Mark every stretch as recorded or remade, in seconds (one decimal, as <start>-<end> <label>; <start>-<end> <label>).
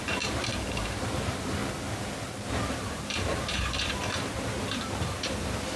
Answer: 0.0-1.6 remade; 1.6-2.7 recorded; 2.7-5.8 remade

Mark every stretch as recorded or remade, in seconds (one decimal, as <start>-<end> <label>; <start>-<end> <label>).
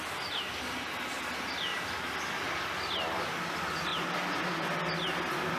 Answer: 0.0-3.9 recorded; 3.9-4.4 remade; 4.4-5.6 recorded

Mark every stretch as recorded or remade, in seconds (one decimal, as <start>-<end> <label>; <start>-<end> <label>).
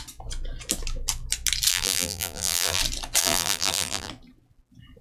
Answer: 0.0-1.7 recorded; 1.7-2.8 remade; 2.8-3.2 recorded; 3.2-4.1 remade; 4.1-5.0 recorded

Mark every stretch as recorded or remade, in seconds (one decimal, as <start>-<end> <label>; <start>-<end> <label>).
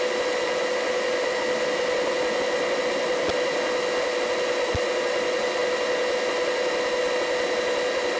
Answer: 0.0-8.2 recorded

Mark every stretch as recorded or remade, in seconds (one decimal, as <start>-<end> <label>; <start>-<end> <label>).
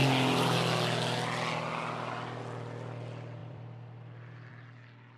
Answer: 0.0-3.4 recorded; 3.4-4.5 remade; 4.5-5.2 recorded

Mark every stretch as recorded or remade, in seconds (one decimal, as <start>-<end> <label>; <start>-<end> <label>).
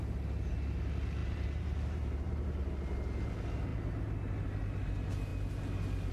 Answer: 0.0-1.2 recorded; 1.2-2.7 remade; 2.7-6.1 recorded